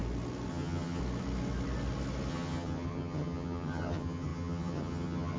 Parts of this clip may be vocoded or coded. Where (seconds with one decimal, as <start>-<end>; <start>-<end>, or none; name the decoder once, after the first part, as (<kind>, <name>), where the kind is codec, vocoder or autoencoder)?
0.5-1.0 (vocoder, HiFi-GAN); 2.3-5.4